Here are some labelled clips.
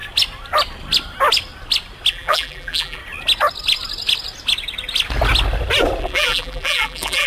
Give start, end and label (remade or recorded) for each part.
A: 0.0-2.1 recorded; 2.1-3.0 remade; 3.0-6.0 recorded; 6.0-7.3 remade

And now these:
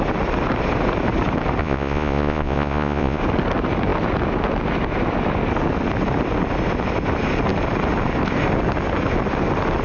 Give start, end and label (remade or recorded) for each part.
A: 0.0-1.6 recorded; 1.6-3.2 remade; 3.2-9.8 recorded

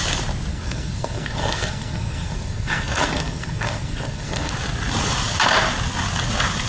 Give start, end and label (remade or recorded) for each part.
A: 0.0-0.5 recorded; 0.5-4.5 remade; 4.5-6.7 recorded